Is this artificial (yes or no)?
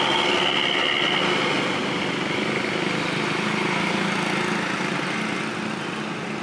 no